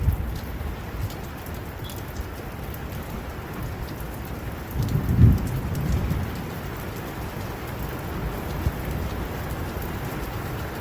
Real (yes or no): yes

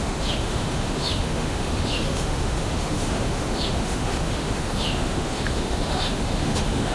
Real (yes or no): no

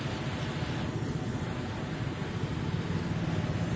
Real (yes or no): yes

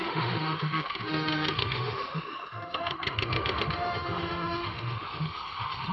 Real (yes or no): no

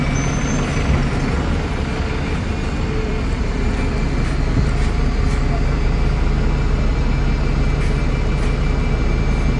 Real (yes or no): yes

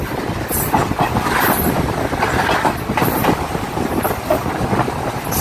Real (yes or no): yes